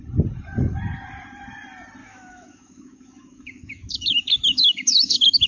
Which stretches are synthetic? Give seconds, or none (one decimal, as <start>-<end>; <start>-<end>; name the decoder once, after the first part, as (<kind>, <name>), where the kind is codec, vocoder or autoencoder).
2.0-5.5 (autoencoder, DAC-VAE)